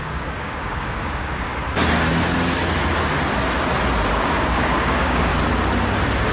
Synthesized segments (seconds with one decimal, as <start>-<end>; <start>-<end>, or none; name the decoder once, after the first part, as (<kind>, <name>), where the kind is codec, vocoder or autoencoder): 0.0-1.5 (codec, DAC); 4.1-5.3